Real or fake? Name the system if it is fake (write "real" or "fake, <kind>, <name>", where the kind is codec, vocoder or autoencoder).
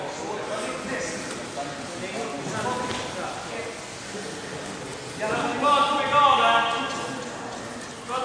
real